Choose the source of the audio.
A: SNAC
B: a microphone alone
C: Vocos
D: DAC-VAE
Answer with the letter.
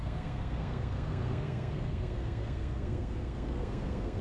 A